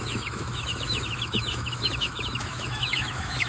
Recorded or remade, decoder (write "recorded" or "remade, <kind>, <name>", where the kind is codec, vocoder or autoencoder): remade, autoencoder, DAC-VAE